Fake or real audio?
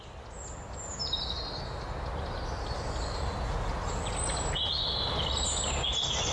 real